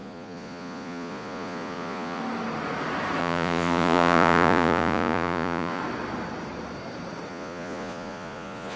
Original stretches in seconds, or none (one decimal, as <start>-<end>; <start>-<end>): 2.2-3.2; 5.8-7.3